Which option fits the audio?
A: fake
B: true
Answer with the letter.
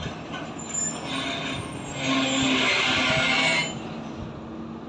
B